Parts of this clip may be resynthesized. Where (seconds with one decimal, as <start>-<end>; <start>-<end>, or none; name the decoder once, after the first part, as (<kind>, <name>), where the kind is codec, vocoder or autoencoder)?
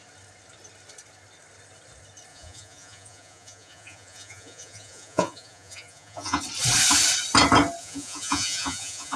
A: 2.3-6.4 (vocoder, Vocos); 7.8-9.2